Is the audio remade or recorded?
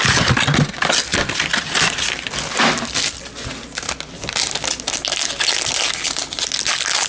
recorded